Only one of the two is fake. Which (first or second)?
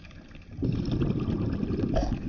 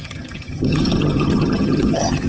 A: second